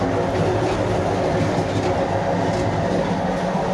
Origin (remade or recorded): recorded